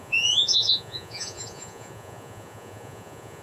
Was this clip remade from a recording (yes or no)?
yes